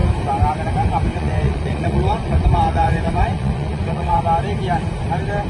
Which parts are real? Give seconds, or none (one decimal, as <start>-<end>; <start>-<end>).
0.0-1.1; 4.2-5.5